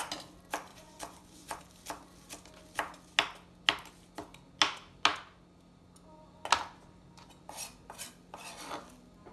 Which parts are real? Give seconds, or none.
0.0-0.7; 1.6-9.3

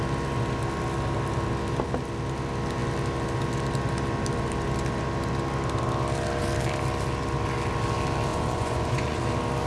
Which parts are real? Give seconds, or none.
0.0-8.3; 9.2-9.7

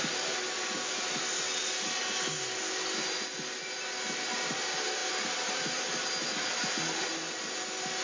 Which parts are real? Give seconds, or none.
0.0-8.0

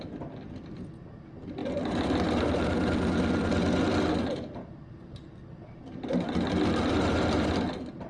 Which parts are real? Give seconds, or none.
0.0-8.1

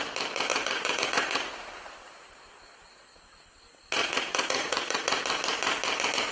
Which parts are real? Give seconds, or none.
0.0-0.5; 1.5-4.0; 5.2-6.3

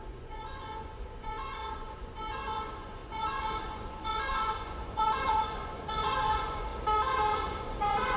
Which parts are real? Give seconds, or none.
6.7-7.6

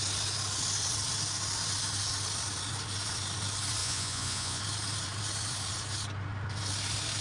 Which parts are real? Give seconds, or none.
0.0-3.8; 4.6-7.2